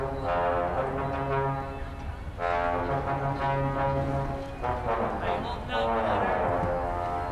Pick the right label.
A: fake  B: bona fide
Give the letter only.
B